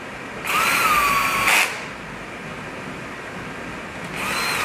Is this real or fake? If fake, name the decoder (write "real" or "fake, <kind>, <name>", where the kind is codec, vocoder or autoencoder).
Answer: real